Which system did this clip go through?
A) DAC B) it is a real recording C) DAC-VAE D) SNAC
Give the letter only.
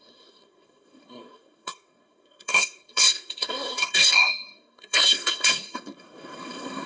D